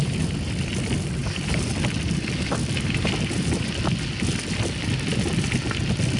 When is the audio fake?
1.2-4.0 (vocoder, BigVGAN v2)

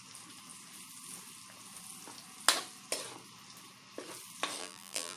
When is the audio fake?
4.6-5.2 (vocoder, BigVGAN v2)

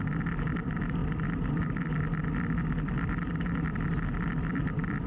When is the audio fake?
none